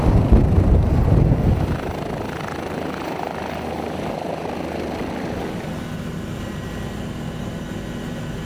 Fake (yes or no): no